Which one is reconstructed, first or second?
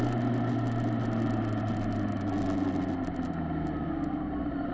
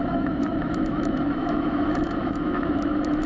second